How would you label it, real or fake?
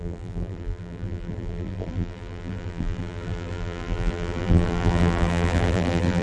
fake